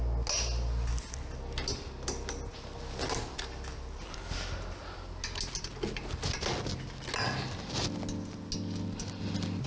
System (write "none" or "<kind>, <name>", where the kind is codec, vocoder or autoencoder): none